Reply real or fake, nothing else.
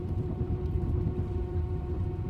fake